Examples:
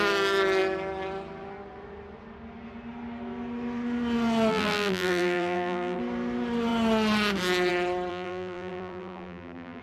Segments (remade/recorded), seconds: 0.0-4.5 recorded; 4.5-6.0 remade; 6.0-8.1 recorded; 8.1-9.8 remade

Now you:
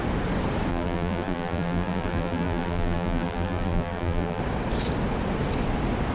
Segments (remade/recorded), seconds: 0.0-0.7 recorded; 0.7-4.4 remade; 4.4-6.1 recorded

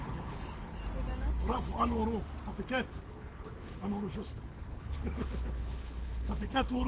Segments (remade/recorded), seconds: 0.0-0.8 remade; 0.8-1.3 recorded; 1.3-2.0 remade; 2.0-3.0 recorded; 3.0-6.9 remade